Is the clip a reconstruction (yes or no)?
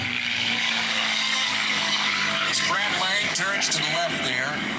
yes